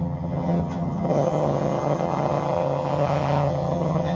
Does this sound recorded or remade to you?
remade